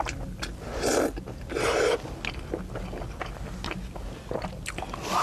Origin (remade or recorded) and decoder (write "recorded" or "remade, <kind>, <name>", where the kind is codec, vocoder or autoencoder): recorded